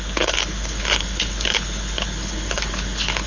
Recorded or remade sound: remade